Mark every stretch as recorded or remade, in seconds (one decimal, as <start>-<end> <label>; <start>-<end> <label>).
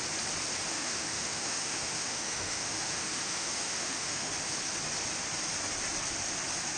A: 0.0-0.7 recorded; 0.7-4.3 remade; 4.3-6.8 recorded